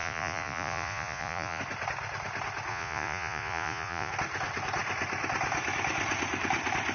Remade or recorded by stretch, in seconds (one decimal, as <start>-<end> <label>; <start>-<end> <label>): 0.0-1.6 remade; 1.6-2.7 recorded; 2.7-4.1 remade; 4.1-6.9 recorded